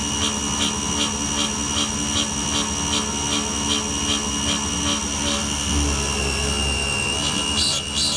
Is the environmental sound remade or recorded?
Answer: recorded